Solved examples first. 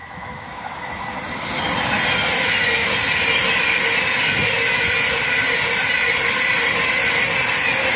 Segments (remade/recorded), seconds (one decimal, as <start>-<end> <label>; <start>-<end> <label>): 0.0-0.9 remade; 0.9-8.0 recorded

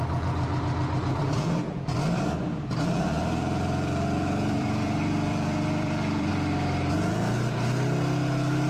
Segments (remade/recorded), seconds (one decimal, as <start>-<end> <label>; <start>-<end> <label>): 0.0-1.9 remade; 1.9-2.8 recorded; 2.8-6.3 remade; 6.3-8.7 recorded

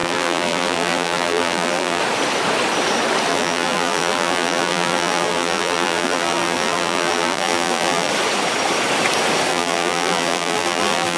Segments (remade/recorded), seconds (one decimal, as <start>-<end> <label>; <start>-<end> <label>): 0.0-2.0 remade; 2.0-3.3 recorded; 3.3-8.1 remade; 8.1-9.5 recorded; 9.5-11.2 remade

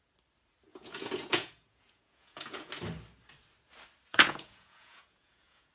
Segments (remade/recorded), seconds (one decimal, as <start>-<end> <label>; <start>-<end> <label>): 0.0-0.7 recorded; 0.7-2.7 remade; 2.7-4.1 recorded; 4.1-5.7 remade

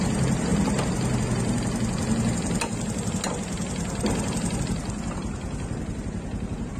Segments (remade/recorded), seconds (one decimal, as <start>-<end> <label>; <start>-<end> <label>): 0.0-6.8 recorded